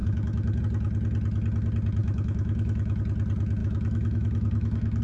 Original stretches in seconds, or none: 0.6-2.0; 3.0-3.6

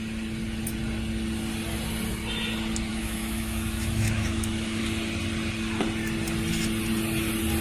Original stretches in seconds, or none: 0.0-2.9; 4.8-7.6

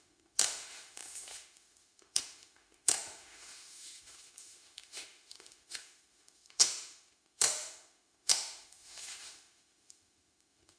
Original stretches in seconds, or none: none

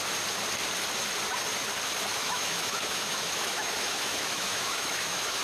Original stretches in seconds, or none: 0.0-2.1

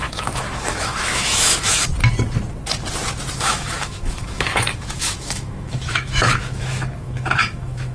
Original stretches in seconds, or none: 1.9-3.4

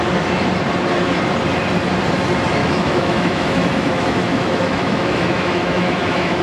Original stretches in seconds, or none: 0.0-2.6